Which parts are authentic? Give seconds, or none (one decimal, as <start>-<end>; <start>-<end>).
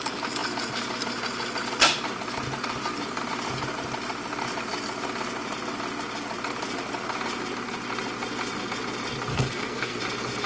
0.0-9.3; 10.0-10.5